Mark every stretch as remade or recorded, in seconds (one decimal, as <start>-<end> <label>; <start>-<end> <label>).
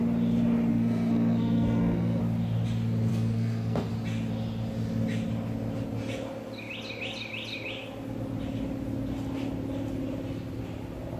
0.0-0.7 recorded; 0.7-2.2 remade; 2.2-3.1 recorded; 3.1-3.9 remade; 3.9-11.2 recorded